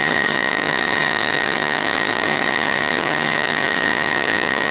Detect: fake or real fake